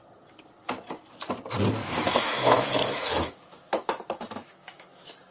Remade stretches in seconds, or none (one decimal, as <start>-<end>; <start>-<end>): 1.8-5.3